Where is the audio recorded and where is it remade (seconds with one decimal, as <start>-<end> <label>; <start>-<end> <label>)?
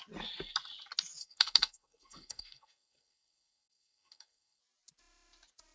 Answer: 0.0-1.2 recorded; 1.2-4.6 remade; 4.6-5.7 recorded